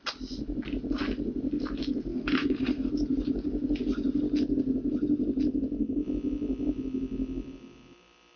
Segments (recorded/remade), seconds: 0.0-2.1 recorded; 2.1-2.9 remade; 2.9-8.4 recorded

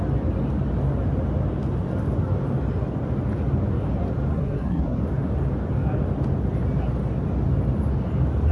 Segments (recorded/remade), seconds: 0.0-4.3 recorded; 4.3-5.0 remade; 5.0-8.5 recorded

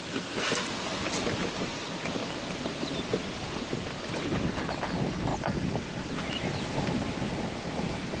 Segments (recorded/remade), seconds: 0.0-0.7 remade; 0.7-8.2 recorded

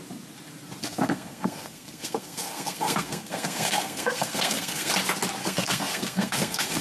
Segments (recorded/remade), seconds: 0.0-0.8 recorded; 0.8-4.9 remade; 4.9-5.4 recorded; 5.4-6.8 remade

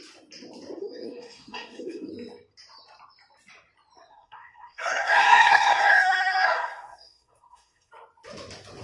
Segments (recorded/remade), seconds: 0.0-0.8 recorded; 0.8-2.1 remade; 2.1-4.1 recorded; 4.1-7.9 remade; 7.9-8.8 recorded

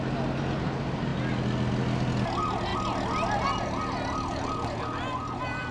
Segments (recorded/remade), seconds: 0.0-5.7 recorded

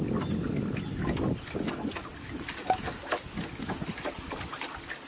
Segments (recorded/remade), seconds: 0.0-5.1 recorded